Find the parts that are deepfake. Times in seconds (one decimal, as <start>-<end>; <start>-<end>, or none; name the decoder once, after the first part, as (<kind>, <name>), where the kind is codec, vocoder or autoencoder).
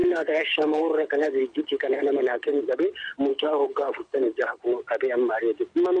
0.0-2.6 (codec, HILCodec); 3.3-4.6